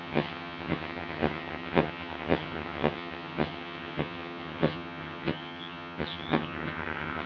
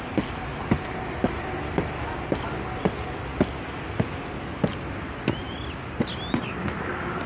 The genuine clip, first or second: second